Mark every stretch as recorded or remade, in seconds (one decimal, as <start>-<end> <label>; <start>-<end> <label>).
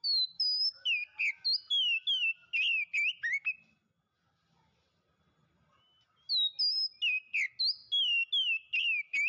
0.0-9.3 recorded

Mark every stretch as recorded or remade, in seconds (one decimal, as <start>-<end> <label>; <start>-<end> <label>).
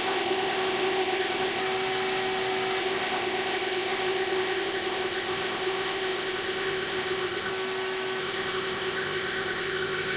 0.0-1.6 remade; 1.6-2.8 recorded; 2.8-7.5 remade; 7.5-8.2 recorded; 8.2-10.2 remade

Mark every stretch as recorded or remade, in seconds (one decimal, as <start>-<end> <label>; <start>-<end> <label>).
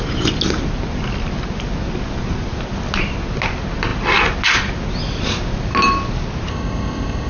0.0-6.5 recorded; 6.5-7.3 remade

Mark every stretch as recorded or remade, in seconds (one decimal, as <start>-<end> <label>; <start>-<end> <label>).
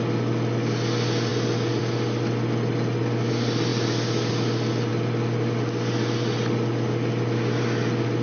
0.0-8.2 recorded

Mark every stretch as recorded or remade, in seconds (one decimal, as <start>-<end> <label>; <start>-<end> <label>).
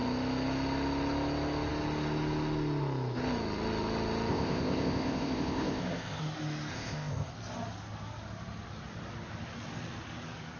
0.0-4.3 recorded; 4.3-6.2 remade; 6.2-6.7 recorded; 6.7-7.3 remade; 7.3-10.6 recorded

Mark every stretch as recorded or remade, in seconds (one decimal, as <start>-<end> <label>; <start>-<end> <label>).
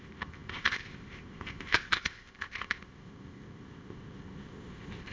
0.0-5.1 remade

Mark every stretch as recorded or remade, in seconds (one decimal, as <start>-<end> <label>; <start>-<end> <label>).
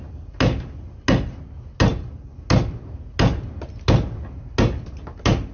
0.0-5.5 recorded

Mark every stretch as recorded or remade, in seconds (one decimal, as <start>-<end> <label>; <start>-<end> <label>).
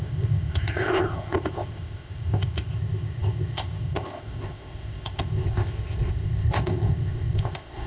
0.0-7.9 remade